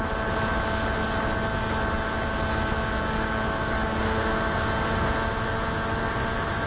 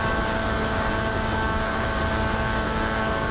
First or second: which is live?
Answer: first